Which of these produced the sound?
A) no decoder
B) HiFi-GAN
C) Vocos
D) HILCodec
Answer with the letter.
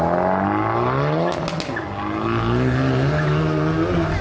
A